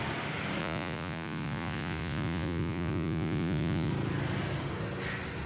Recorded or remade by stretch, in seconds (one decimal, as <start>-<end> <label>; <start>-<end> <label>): 0.0-0.6 recorded; 0.6-3.9 remade; 3.9-5.5 recorded

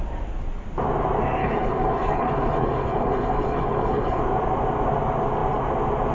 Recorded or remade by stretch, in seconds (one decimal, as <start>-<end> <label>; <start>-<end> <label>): 0.0-1.4 recorded; 1.4-4.2 remade; 4.2-6.1 recorded

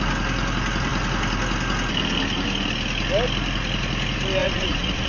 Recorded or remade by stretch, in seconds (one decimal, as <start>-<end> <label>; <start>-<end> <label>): 0.0-4.4 recorded; 4.4-5.1 remade

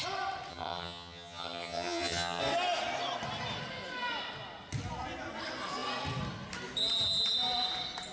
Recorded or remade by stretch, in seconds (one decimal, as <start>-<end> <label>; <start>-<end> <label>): 0.0-0.5 recorded; 0.5-2.4 remade; 2.4-8.1 recorded